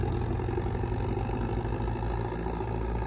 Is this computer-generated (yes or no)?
no